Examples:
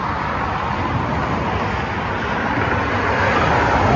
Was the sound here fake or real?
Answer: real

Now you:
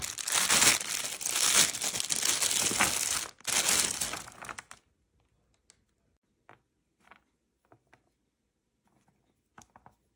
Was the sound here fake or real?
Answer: real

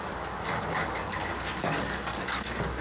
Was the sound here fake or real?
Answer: fake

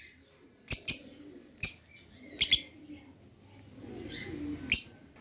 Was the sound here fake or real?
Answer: real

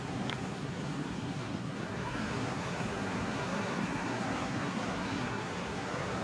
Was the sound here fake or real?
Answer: fake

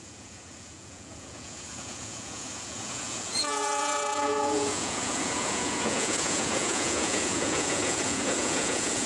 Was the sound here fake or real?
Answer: fake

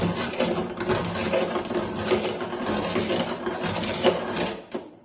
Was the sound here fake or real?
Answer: real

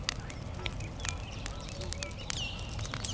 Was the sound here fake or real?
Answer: real